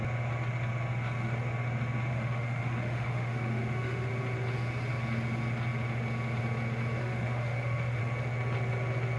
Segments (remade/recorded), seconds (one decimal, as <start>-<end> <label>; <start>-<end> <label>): 0.0-2.1 recorded; 2.1-4.1 remade; 4.1-7.0 recorded; 7.0-8.0 remade; 8.0-9.2 recorded